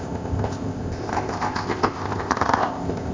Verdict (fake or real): fake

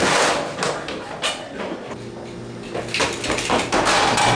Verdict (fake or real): real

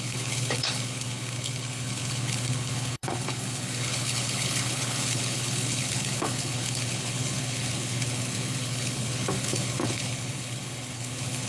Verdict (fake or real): fake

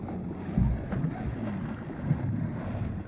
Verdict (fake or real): real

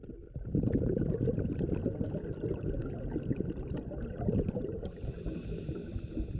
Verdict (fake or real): real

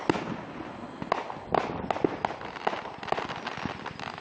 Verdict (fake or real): real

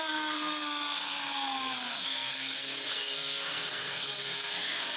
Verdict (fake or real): fake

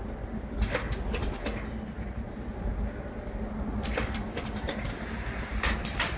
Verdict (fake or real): real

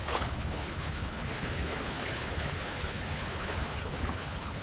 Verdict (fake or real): fake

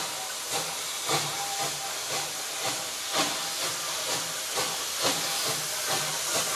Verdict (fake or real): real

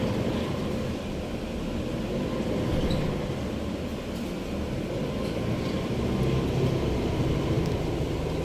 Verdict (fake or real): real